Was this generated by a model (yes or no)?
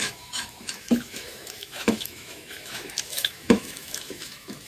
yes